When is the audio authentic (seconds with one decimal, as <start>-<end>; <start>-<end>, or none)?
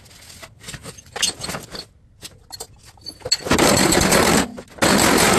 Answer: 0.0-5.4